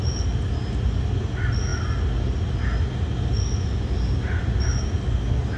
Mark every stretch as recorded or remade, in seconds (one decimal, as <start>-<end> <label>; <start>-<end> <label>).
0.0-5.6 recorded